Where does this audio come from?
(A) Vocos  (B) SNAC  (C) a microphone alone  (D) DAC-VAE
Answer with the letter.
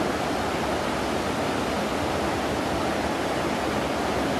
C